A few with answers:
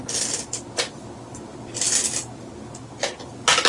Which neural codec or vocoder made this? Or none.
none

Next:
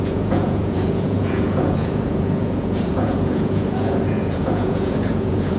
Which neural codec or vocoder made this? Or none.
vocoder, Vocos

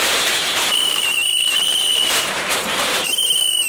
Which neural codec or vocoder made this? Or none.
vocoder, BigVGAN v2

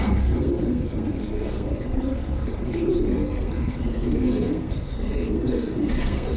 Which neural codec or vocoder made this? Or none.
codec, SNAC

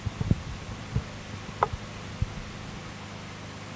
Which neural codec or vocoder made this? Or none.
none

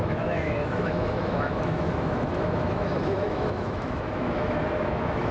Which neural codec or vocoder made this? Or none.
autoencoder, DAC-VAE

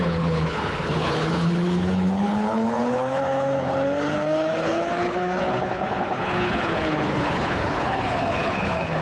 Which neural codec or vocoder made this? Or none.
codec, HILCodec